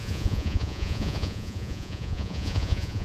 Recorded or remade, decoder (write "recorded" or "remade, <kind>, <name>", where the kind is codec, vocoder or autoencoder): remade, vocoder, Vocos